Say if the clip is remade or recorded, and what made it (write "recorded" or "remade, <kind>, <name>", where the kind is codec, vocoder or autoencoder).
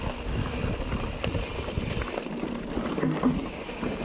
recorded